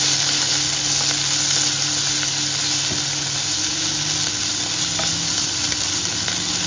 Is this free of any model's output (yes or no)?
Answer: yes